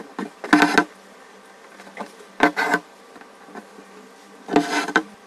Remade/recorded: recorded